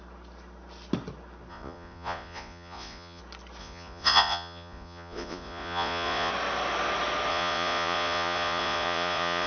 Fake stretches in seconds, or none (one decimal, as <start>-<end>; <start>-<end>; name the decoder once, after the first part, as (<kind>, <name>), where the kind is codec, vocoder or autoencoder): 1.5-3.2 (vocoder, Vocos); 3.6-6.3; 7.3-9.5